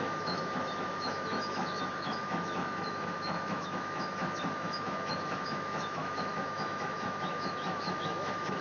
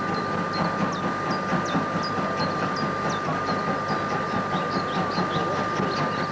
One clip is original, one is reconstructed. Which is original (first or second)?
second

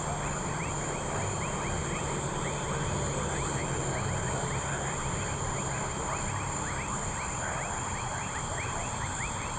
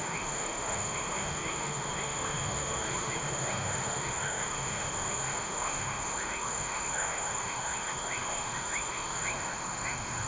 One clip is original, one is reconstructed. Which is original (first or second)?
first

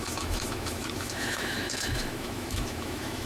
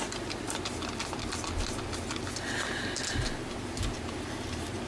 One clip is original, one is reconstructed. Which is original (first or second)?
second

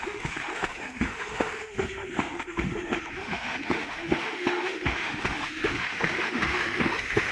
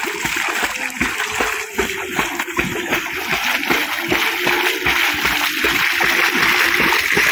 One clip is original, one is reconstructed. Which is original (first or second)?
second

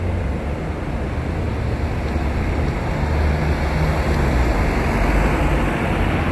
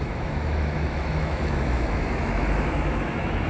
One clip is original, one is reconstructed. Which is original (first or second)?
first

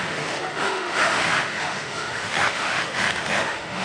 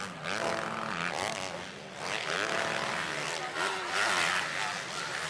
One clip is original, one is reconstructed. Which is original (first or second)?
second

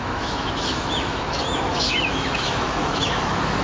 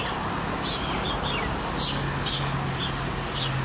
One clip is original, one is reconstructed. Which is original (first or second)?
second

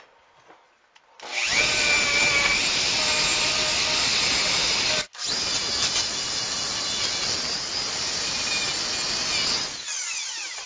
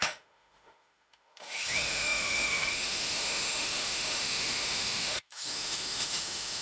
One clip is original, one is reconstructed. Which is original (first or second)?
first